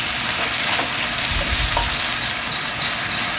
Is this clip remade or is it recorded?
recorded